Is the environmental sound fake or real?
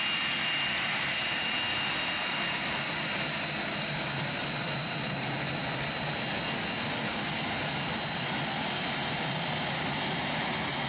real